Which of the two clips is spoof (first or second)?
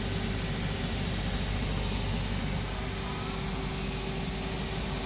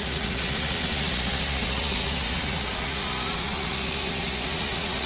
second